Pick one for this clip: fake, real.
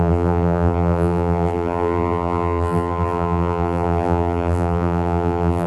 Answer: fake